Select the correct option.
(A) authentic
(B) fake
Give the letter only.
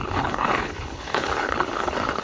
B